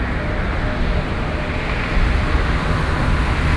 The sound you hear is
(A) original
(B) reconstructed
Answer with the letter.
A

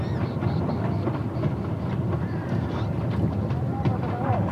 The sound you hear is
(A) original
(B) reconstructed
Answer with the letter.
A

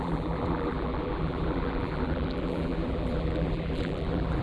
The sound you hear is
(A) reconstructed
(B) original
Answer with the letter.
A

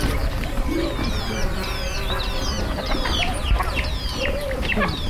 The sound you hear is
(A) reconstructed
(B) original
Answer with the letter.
A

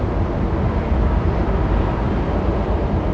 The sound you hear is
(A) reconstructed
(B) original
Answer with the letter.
A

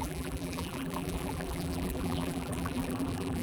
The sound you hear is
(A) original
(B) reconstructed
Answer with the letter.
B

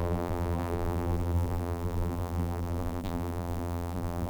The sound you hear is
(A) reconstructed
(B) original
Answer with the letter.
A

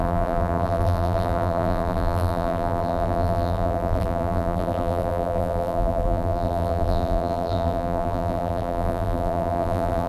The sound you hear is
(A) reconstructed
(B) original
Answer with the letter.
A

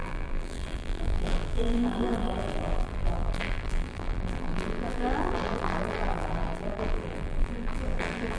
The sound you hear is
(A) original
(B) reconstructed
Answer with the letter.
B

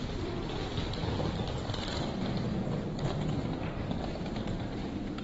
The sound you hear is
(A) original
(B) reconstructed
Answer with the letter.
B